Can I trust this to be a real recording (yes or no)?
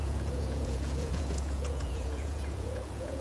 no